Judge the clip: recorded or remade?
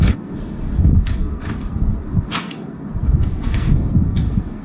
remade